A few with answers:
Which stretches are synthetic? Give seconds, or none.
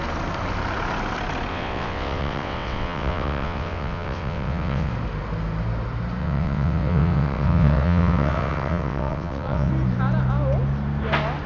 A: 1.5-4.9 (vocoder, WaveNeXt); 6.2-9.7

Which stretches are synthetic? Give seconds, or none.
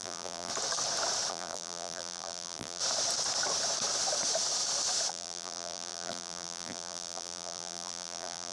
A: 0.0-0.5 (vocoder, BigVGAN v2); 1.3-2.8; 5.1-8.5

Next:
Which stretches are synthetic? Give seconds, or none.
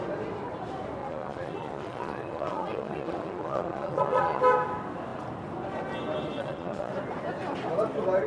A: 1.0-4.4 (vocoder, Vocos); 6.3-6.9